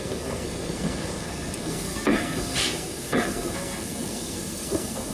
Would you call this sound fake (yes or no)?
yes